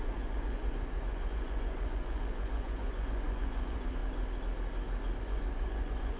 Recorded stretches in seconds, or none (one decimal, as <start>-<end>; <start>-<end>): 4.0-5.2